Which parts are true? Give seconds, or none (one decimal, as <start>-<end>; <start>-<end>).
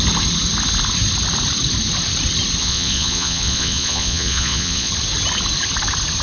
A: 0.0-2.6; 4.9-6.2